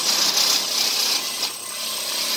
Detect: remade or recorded recorded